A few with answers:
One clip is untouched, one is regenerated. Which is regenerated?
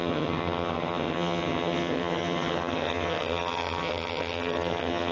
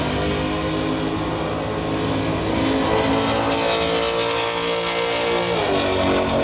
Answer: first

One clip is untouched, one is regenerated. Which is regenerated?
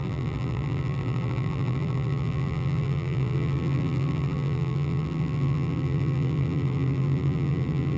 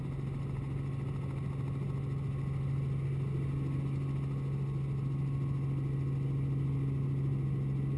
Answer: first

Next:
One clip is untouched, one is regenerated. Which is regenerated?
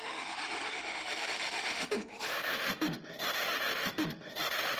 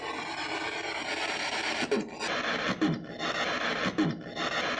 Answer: first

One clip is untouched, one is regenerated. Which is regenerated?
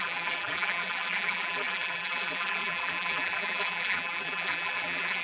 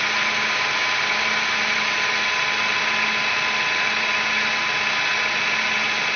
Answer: first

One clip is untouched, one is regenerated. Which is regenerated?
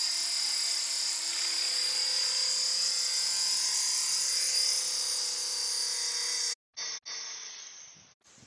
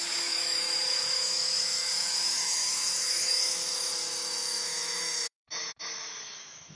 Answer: second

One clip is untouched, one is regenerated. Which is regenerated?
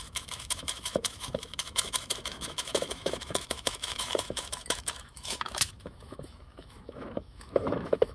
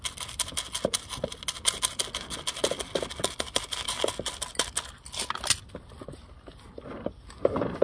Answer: first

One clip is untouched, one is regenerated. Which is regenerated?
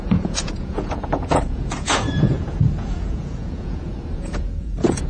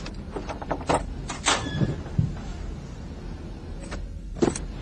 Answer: first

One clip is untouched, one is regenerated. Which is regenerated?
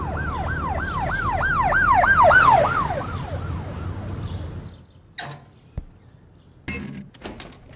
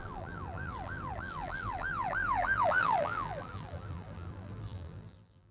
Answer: second